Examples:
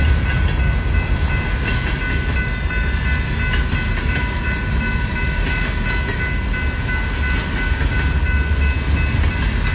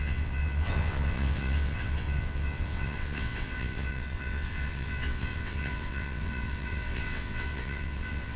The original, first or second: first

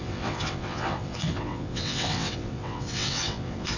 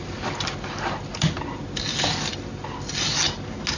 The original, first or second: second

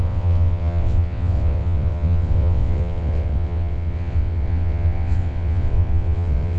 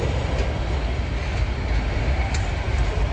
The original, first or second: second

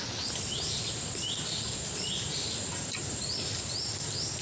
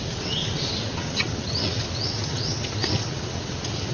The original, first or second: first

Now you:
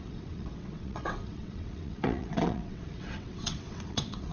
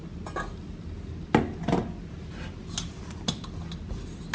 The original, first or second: second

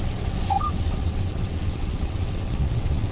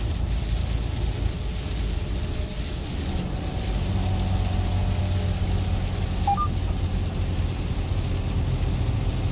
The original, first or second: second